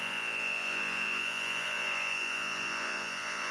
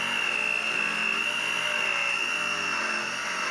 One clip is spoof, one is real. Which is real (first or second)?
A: second